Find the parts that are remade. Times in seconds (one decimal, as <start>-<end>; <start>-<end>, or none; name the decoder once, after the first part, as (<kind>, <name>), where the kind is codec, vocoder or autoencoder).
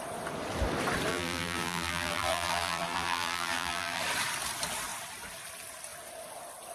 1.1-4.0 (vocoder, BigVGAN v2)